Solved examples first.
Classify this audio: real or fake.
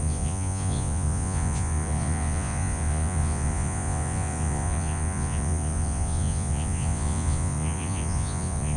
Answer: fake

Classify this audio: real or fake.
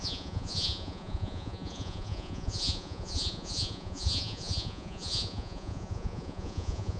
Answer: fake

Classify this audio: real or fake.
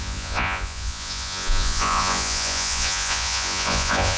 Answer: fake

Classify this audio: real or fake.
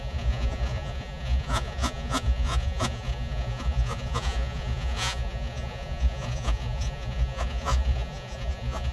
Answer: fake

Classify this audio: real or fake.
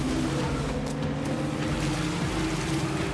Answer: real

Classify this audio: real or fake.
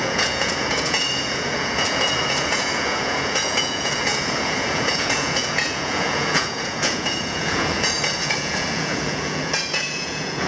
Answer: fake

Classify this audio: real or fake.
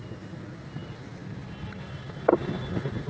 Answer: real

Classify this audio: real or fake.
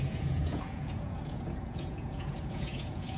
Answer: fake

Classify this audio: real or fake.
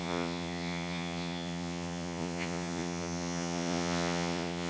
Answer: fake